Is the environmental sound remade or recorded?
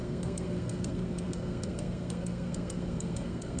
remade